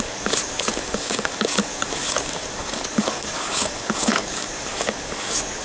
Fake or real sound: fake